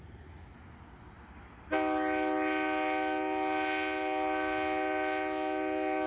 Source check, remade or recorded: recorded